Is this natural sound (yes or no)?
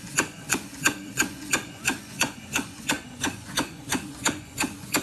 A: no